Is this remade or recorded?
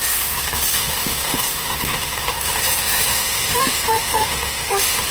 remade